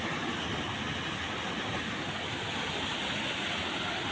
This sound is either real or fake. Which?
real